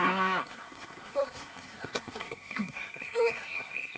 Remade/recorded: remade